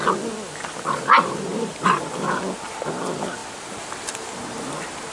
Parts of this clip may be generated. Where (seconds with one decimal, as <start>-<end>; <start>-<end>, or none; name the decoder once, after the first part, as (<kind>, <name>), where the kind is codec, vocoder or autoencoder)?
3.4-4.1 (vocoder, BigVGAN v2)